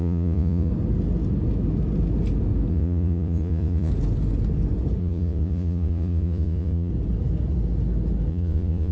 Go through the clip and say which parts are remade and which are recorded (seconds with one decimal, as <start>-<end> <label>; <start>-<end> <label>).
0.0-0.7 remade; 0.7-2.7 recorded; 2.7-3.9 remade; 3.9-5.0 recorded; 5.0-6.9 remade; 6.9-8.3 recorded; 8.3-8.9 remade